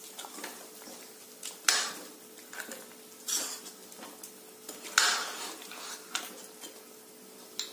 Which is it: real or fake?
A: real